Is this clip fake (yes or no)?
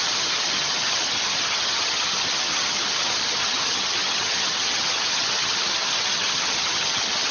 yes